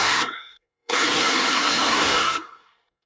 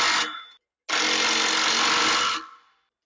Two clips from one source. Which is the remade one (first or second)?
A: first